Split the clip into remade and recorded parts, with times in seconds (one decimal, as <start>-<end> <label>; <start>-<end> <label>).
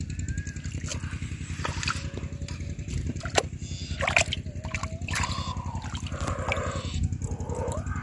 0.0-8.0 recorded